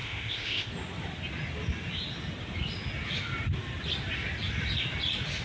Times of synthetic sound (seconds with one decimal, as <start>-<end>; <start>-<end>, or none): 0.0-0.7